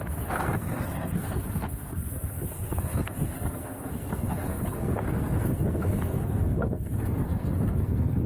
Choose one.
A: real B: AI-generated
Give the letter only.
B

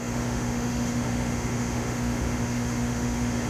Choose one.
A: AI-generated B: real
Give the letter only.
A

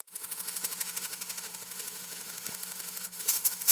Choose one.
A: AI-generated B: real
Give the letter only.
A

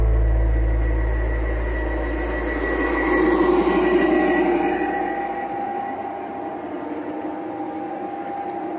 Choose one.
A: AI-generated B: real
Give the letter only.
B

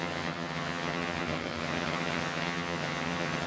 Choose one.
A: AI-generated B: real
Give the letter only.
A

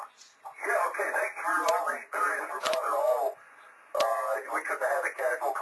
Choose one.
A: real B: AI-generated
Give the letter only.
B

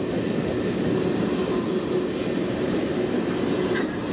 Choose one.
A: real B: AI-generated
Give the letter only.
A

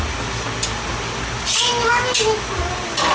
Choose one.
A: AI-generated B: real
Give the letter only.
B